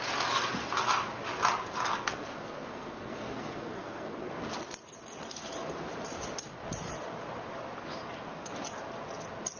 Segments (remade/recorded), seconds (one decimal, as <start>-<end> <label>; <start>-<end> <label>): 0.0-1.9 recorded; 1.9-4.3 remade; 4.3-9.6 recorded